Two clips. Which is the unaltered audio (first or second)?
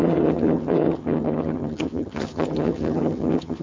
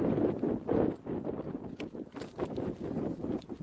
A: second